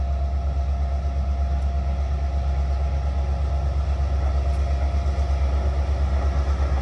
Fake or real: real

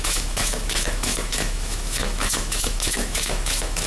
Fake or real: fake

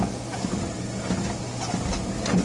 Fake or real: real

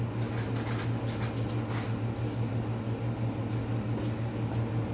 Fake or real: real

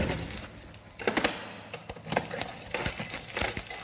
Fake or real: real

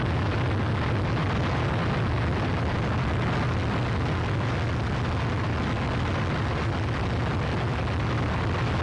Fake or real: real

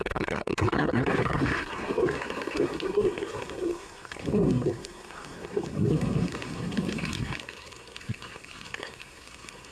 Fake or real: fake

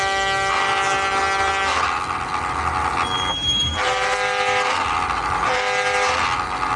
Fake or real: real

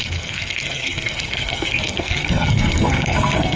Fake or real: fake